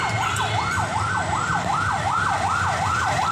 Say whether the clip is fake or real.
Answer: real